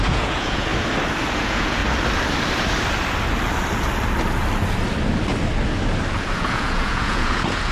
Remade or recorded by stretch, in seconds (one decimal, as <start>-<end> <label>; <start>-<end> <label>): 0.0-0.7 remade; 0.7-1.4 recorded; 1.4-1.8 remade; 1.8-6.1 recorded; 6.1-7.7 remade